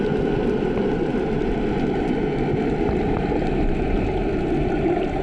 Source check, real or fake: real